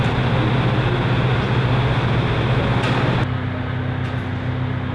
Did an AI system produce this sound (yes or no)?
no